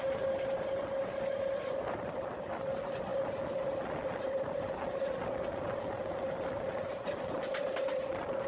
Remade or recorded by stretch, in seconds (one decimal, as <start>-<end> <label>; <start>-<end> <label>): 0.0-8.5 recorded